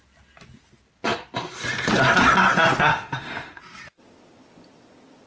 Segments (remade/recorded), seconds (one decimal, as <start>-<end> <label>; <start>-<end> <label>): 0.0-2.9 recorded; 2.9-3.6 remade; 3.6-5.3 recorded